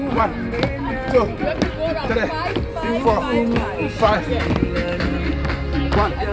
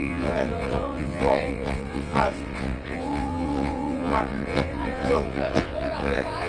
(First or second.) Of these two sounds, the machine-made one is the second